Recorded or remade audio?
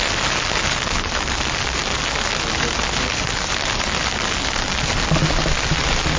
recorded